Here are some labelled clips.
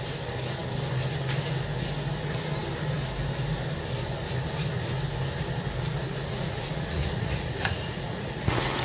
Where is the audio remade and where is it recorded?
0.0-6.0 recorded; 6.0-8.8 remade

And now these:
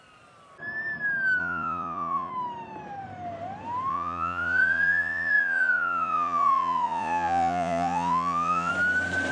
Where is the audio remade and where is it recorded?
0.0-1.4 recorded; 1.4-2.3 remade; 2.3-3.9 recorded; 3.9-8.7 remade; 8.7-9.3 recorded

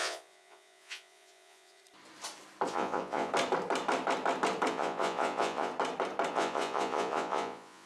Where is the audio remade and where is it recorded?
0.0-1.8 remade; 1.8-2.7 recorded; 2.7-3.3 remade; 3.3-4.7 recorded; 4.7-5.7 remade; 5.7-6.3 recorded; 6.3-7.9 remade